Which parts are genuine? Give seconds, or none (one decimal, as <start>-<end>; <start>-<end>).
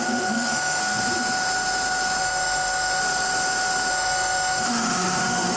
0.8-2.2; 3.0-3.9